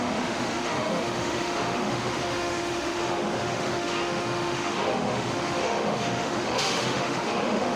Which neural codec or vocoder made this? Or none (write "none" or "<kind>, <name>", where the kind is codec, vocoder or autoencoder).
autoencoder, DAC-VAE